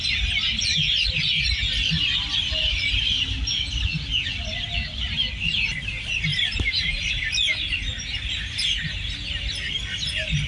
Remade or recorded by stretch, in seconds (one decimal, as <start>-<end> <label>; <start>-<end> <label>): 0.0-6.3 recorded; 6.3-7.1 remade; 7.1-10.5 recorded